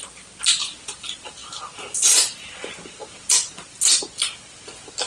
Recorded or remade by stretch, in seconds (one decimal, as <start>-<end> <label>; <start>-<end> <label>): 0.0-5.1 recorded